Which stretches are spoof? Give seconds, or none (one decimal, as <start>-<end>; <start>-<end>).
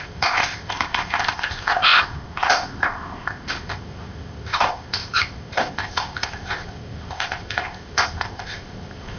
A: 0.0-9.2